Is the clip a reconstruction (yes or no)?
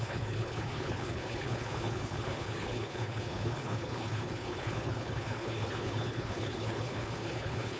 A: yes